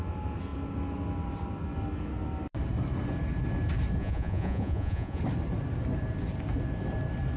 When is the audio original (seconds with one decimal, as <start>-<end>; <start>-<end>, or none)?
0.0-4.0; 5.2-7.4